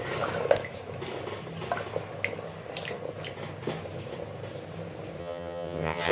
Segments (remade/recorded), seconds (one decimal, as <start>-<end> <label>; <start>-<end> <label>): 0.0-5.2 recorded; 5.2-6.1 remade